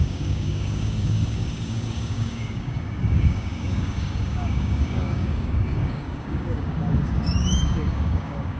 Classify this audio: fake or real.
fake